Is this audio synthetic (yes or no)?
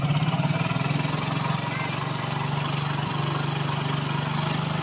no